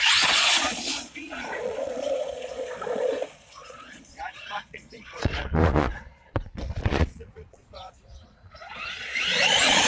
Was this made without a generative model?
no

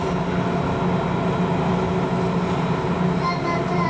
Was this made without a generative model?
yes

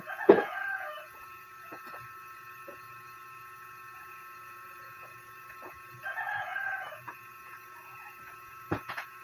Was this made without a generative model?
no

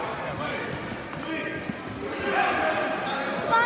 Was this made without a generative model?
yes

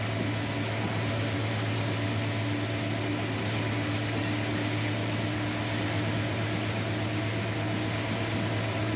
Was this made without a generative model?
yes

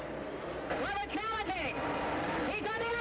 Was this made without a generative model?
yes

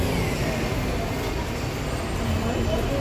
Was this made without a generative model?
yes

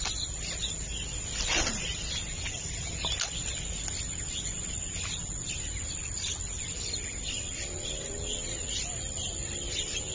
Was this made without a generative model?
yes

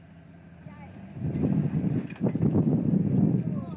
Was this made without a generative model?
yes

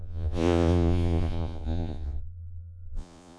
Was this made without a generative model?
no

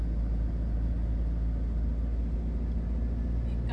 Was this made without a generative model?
yes